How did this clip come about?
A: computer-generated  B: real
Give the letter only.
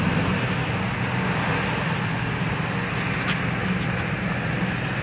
B